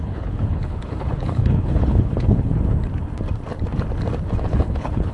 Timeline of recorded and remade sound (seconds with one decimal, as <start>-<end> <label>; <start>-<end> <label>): 0.0-2.5 remade; 2.5-4.4 recorded; 4.4-5.1 remade